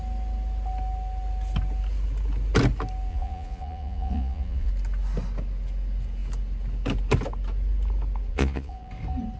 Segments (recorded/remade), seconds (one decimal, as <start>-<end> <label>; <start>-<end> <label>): 0.0-3.1 recorded; 3.1-4.7 remade; 4.7-8.3 recorded; 8.3-8.9 remade; 8.9-9.4 recorded